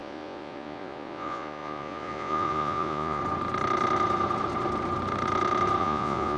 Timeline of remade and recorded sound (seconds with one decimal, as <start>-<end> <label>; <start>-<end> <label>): 0.0-3.2 remade; 3.2-5.8 recorded; 5.8-6.4 remade